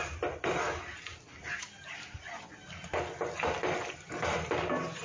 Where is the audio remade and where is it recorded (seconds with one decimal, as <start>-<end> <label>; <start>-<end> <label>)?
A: 0.0-5.0 recorded